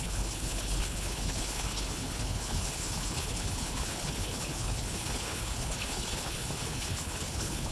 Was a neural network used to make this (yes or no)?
yes